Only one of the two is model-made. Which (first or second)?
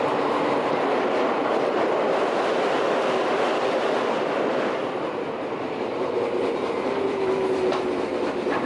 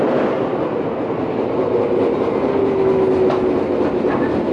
first